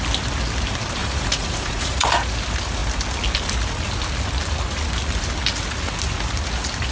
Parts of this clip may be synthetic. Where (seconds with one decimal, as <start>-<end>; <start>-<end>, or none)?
1.0-2.1